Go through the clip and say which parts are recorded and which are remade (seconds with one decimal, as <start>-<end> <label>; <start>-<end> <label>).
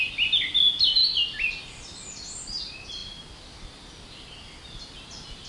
0.0-5.5 recorded